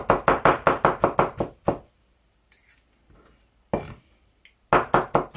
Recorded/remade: recorded